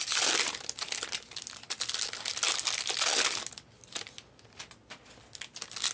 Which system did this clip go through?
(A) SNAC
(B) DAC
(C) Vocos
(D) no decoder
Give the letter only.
D